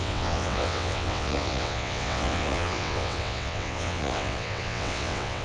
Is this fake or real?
fake